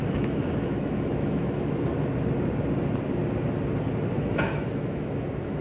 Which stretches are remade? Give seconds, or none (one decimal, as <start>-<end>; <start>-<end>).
0.0-1.9; 4.1-5.6